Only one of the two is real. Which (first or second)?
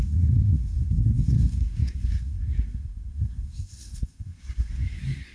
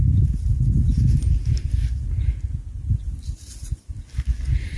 second